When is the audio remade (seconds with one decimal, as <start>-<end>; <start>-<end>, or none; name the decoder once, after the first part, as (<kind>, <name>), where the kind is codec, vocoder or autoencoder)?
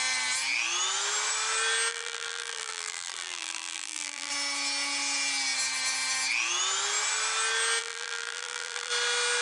1.9-4.3 (vocoder, BigVGAN v2); 7.8-8.9